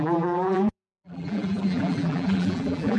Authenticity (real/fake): fake